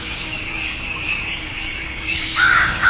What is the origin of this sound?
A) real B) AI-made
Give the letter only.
B